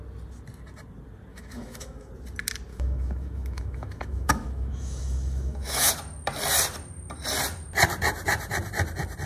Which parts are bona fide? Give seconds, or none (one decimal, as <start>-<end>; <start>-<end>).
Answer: 0.0-1.3; 2.1-2.7; 5.9-9.3